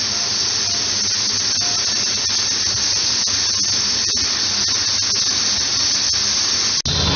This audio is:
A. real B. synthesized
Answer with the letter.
A